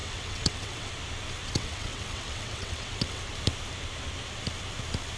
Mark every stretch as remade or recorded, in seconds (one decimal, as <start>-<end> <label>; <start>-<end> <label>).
0.0-0.9 remade; 0.9-1.4 recorded; 1.4-3.2 remade; 3.2-5.2 recorded